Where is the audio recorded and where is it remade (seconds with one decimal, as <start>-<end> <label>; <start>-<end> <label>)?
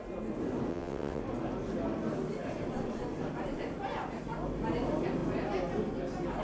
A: 0.0-0.7 recorded; 0.7-1.2 remade; 1.2-6.4 recorded